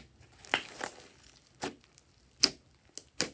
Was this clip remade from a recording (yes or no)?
no